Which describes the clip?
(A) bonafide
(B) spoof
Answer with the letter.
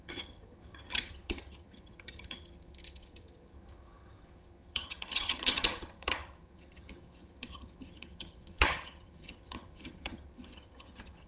B